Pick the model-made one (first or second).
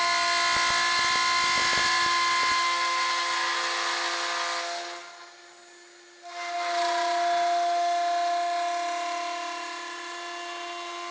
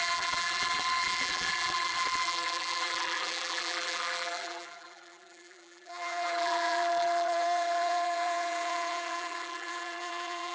second